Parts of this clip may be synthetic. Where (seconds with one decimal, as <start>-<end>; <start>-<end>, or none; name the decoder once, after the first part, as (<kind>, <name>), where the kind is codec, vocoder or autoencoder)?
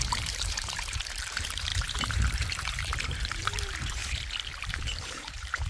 0.0-4.0 (vocoder, BigVGAN v2); 4.6-5.7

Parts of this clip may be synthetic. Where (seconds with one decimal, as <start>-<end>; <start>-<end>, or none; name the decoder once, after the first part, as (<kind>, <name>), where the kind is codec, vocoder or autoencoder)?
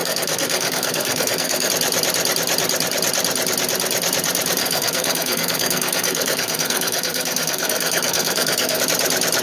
0.0-1.7 (codec, SNAC); 4.6-8.8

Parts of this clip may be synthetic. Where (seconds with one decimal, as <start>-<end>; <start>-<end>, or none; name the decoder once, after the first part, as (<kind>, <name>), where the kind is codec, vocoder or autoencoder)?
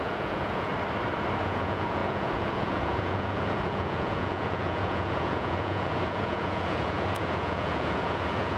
0.0-0.7 (vocoder, Vocos); 1.4-8.6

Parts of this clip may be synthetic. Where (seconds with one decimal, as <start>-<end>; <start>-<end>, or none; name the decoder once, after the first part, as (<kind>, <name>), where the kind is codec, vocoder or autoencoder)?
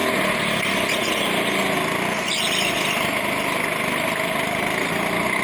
none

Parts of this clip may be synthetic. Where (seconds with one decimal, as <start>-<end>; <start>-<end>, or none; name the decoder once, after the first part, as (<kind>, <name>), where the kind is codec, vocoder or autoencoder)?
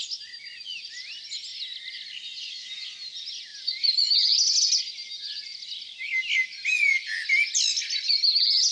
none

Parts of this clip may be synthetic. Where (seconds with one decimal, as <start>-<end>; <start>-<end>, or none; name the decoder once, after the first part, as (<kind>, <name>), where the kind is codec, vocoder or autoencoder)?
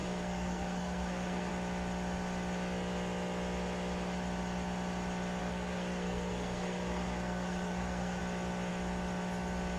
0.0-1.5 (codec, SNAC); 5.4-8.2